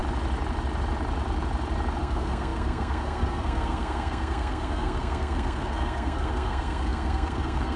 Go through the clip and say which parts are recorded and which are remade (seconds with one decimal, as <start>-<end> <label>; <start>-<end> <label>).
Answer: 0.0-2.0 recorded; 2.0-7.8 remade